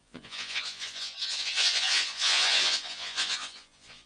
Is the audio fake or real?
fake